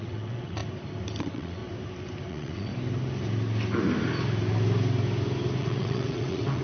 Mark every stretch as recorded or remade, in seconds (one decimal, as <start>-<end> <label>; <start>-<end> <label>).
0.0-0.6 remade; 0.6-1.2 recorded; 1.2-1.6 remade; 1.6-2.3 recorded; 2.3-2.7 remade; 2.7-5.6 recorded; 5.6-6.6 remade